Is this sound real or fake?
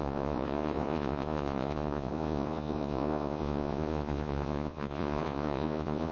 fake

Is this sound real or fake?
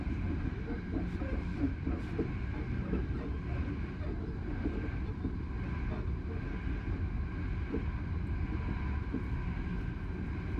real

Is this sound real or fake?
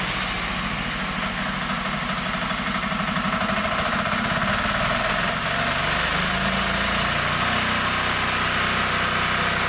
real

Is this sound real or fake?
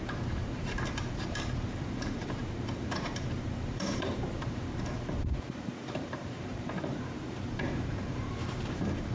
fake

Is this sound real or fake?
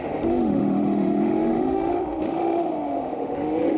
fake